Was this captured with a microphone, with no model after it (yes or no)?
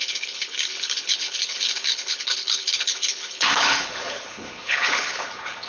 no